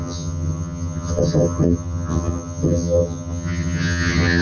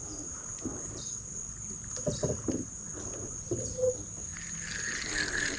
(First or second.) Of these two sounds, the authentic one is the second